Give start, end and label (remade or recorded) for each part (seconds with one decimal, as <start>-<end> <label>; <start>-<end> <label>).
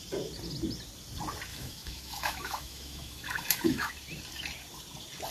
0.0-1.5 recorded; 1.5-3.9 remade; 3.9-5.3 recorded